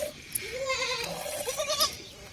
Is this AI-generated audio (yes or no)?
yes